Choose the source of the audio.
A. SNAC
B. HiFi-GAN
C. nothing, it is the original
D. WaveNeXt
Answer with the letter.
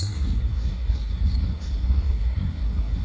A